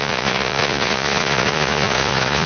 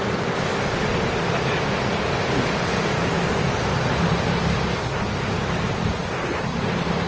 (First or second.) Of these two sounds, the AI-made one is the first